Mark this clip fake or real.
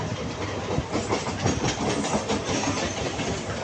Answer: real